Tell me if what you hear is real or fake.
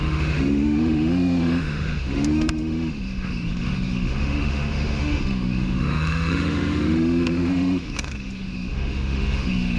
fake